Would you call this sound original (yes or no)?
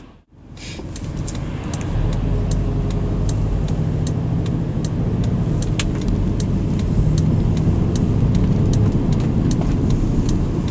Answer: yes